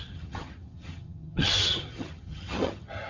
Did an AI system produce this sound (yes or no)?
yes